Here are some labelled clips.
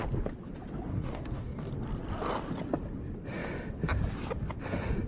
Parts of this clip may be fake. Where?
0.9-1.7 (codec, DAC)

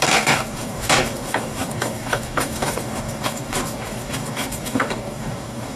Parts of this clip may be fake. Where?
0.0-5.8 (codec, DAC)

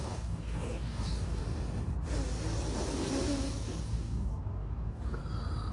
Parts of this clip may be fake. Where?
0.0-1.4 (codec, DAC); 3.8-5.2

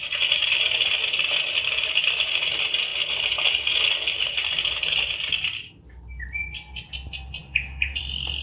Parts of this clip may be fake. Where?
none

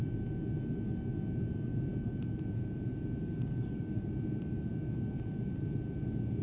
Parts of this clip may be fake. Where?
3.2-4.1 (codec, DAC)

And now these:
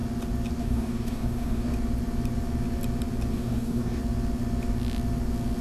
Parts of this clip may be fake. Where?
0.6-1.7 (codec, DAC); 3.3-4.0

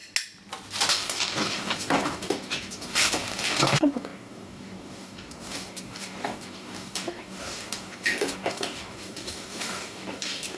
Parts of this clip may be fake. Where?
0.9-10.6 (codec, DAC)

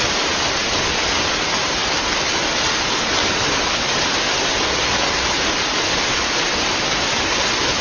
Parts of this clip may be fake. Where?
none